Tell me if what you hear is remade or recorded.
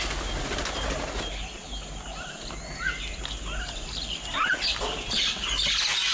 recorded